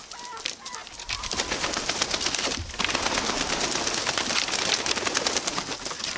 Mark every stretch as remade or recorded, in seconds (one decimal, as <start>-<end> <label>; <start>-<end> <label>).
0.0-6.2 recorded